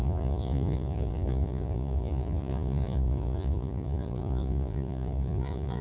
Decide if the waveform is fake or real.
fake